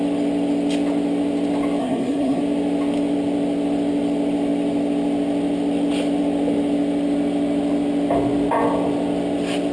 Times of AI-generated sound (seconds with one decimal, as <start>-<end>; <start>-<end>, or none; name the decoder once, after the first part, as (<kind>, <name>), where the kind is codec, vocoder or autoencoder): 1.8-2.4 (codec, SNAC)